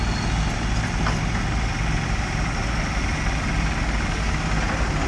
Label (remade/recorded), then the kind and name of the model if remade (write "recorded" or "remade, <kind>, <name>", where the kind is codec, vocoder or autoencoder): recorded